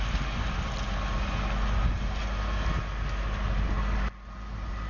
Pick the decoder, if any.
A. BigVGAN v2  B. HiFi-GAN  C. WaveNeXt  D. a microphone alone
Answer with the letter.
D